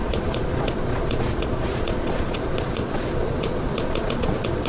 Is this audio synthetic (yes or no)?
yes